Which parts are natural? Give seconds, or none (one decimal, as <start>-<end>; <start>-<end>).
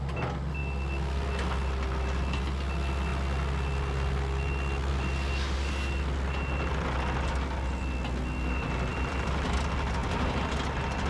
0.0-8.9; 9.6-11.1